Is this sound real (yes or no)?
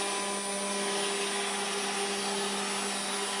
yes